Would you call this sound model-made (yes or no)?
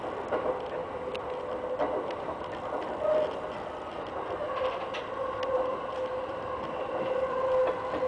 no